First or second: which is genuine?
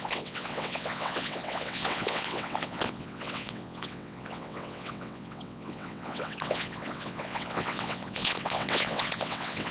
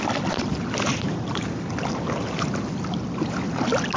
second